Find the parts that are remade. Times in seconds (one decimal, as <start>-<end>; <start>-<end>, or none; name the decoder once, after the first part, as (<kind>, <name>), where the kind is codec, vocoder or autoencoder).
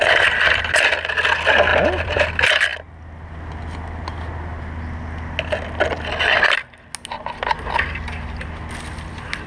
1.7-2.2 (vocoder, BigVGAN v2)